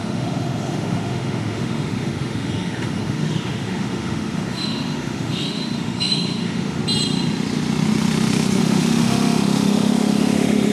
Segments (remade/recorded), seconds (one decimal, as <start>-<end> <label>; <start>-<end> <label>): 0.0-6.8 remade; 6.8-8.6 recorded; 8.6-10.7 remade